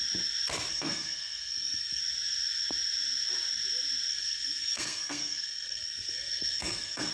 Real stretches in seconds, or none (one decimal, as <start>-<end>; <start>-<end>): 0.0-0.7; 2.0-4.1